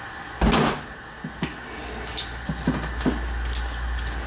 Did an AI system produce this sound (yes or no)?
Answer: no